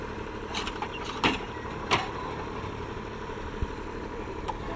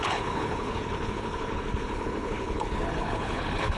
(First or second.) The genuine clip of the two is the first